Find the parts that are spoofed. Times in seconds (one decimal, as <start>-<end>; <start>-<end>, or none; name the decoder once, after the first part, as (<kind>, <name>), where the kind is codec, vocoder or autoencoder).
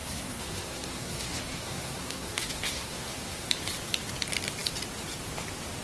0.0-3.5 (codec, SNAC)